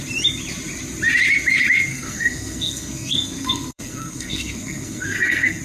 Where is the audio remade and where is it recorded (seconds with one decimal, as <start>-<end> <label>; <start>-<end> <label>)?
0.0-1.9 recorded; 1.9-5.6 remade